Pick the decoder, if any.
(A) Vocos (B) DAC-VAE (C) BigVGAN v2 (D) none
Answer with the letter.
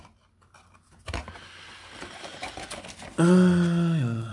D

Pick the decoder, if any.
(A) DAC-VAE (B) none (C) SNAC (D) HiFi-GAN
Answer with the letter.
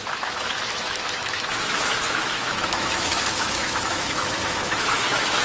A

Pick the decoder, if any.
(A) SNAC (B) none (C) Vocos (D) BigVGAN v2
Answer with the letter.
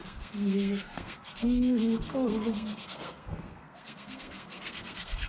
A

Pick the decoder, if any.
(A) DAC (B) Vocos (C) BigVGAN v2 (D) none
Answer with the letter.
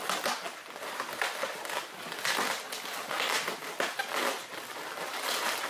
D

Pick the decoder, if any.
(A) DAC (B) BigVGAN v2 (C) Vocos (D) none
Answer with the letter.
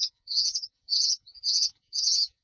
C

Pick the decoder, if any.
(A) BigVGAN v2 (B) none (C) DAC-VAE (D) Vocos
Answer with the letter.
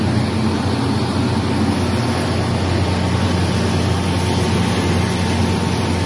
B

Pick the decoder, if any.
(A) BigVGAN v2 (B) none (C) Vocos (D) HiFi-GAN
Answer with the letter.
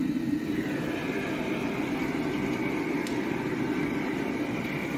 A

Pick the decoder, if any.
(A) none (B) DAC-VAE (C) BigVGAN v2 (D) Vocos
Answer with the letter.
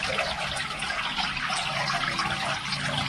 A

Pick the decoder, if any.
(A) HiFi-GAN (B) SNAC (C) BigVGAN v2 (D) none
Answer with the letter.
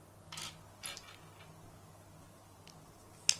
D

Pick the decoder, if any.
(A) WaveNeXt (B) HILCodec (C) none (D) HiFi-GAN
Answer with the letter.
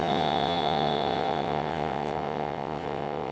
A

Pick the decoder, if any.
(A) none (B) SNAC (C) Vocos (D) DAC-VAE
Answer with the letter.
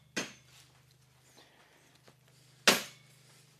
A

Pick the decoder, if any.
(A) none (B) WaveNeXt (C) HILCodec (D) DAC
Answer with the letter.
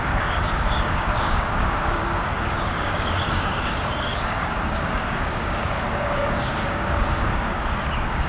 D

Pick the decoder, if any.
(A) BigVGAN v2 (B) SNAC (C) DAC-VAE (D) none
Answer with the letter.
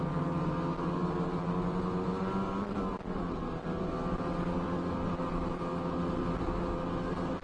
D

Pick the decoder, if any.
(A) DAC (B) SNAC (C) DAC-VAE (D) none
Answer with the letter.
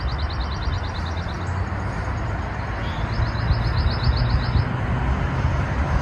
D